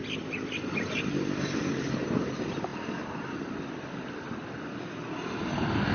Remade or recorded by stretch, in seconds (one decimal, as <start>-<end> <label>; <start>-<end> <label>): 0.0-5.9 recorded